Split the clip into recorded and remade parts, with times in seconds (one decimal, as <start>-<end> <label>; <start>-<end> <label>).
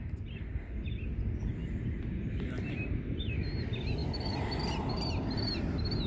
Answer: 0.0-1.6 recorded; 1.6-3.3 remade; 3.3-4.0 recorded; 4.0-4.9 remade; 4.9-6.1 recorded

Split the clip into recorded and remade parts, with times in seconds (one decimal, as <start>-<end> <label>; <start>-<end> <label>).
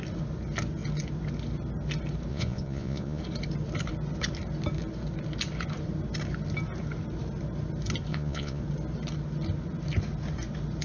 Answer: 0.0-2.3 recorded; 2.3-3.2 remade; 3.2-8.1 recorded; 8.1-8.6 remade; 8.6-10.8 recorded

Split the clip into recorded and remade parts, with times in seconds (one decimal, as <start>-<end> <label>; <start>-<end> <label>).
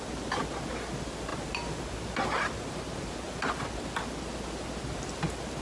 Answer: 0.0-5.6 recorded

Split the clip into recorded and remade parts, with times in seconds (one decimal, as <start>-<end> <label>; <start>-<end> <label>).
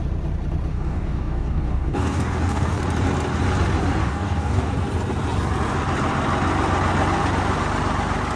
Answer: 0.0-0.7 recorded; 0.7-2.8 remade; 2.8-4.0 recorded; 4.0-4.7 remade; 4.7-8.4 recorded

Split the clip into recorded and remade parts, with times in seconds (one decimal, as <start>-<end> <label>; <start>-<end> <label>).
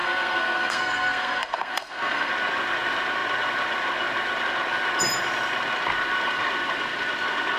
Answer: 0.0-2.3 remade; 2.3-7.6 recorded